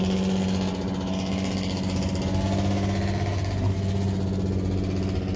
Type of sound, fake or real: real